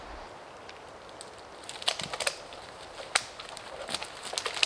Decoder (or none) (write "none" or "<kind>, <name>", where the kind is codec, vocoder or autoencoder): none